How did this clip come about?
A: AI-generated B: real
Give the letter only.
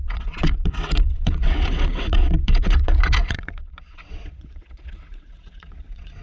A